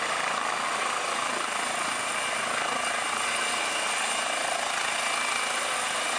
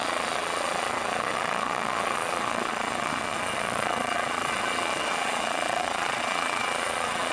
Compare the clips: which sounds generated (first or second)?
second